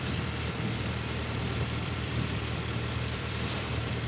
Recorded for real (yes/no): no